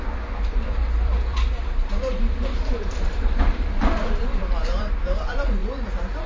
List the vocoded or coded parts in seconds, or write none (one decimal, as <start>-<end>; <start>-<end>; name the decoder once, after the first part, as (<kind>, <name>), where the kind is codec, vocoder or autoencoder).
0.0-5.6 (vocoder, BigVGAN v2)